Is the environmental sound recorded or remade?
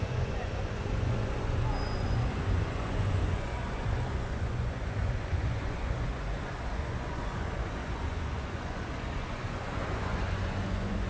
remade